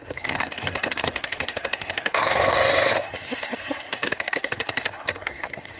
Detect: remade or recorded remade